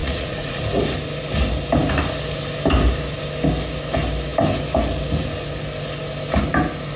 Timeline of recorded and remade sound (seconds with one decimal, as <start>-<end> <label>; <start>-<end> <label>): 0.0-0.6 remade; 0.6-7.0 recorded